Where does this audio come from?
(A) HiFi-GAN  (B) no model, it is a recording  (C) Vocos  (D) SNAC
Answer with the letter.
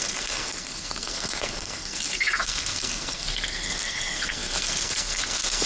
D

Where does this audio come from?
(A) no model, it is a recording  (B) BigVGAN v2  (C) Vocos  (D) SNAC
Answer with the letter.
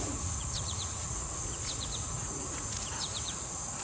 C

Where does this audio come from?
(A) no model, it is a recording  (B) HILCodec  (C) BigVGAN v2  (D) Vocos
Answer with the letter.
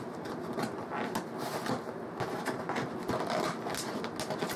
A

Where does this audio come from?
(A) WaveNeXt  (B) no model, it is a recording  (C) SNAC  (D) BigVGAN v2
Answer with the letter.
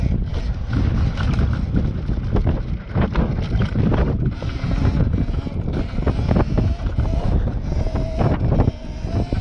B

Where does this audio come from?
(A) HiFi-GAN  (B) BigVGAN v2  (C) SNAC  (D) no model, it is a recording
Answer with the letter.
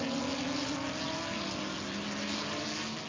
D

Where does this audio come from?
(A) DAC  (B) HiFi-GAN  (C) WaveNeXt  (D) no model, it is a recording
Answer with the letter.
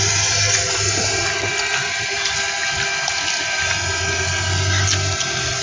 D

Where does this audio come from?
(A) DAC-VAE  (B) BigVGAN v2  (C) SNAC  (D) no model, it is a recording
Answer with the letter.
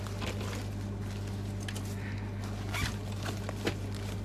D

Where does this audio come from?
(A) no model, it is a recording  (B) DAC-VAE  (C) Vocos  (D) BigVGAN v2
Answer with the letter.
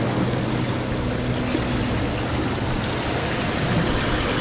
A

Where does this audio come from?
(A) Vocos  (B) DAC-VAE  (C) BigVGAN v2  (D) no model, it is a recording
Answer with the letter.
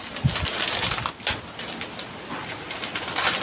D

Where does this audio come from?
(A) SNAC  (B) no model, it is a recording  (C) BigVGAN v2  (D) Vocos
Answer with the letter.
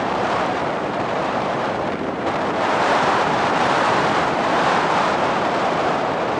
C